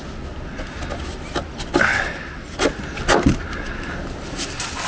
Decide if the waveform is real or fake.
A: real